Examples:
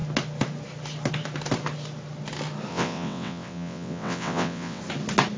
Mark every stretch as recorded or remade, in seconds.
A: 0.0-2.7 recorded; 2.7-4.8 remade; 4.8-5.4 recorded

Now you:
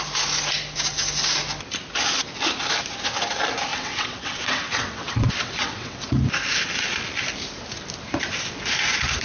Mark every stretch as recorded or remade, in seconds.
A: 0.0-3.7 recorded; 3.7-6.1 remade; 6.1-9.2 recorded

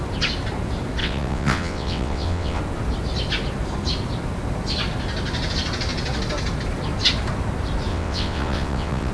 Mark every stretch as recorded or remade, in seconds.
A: 0.0-1.0 recorded; 1.0-2.6 remade; 2.6-7.9 recorded; 7.9-9.1 remade

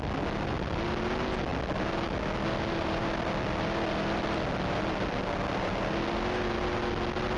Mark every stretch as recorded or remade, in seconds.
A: 0.0-7.4 recorded

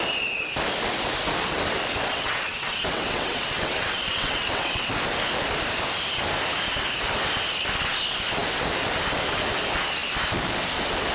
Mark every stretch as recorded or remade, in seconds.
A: 0.0-2.1 recorded; 2.1-4.9 remade; 4.9-11.1 recorded

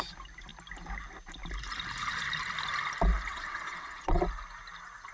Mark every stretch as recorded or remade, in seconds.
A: 0.0-3.3 recorded; 3.3-4.2 remade; 4.2-5.1 recorded

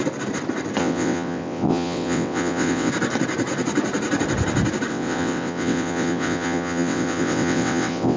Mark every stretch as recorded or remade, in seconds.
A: 0.0-0.8 recorded; 0.8-2.9 remade; 2.9-4.9 recorded; 4.9-8.2 remade

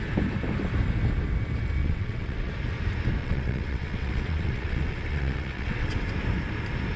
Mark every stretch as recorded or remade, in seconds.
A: 0.0-1.8 recorded; 1.8-2.5 remade; 2.5-3.2 recorded; 3.2-6.0 remade; 6.0-7.0 recorded